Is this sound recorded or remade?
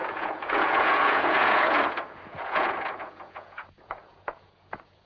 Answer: remade